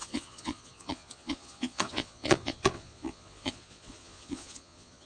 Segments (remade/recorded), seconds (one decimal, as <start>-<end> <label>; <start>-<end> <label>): 0.0-5.1 remade